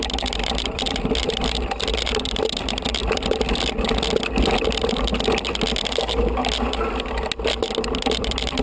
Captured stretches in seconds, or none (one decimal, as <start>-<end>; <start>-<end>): 3.0-7.5